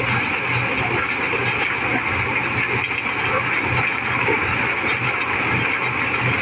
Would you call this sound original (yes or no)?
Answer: yes